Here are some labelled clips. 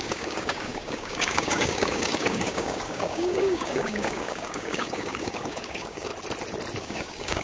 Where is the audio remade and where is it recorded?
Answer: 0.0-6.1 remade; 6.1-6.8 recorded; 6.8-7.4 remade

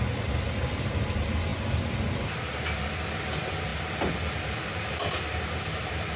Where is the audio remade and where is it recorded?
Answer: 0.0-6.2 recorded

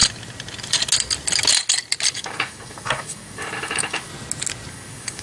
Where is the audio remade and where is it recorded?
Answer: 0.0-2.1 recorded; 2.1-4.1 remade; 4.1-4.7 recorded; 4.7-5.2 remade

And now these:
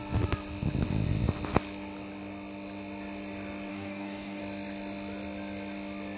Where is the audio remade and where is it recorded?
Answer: 0.0-3.7 recorded; 3.7-4.4 remade; 4.4-6.2 recorded

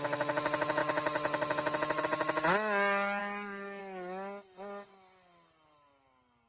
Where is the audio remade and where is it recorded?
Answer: 0.0-3.2 recorded; 3.2-3.8 remade; 3.8-6.5 recorded